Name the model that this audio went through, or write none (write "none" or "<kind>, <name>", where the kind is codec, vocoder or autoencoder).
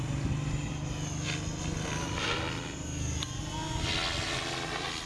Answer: none